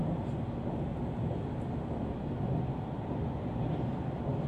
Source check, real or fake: real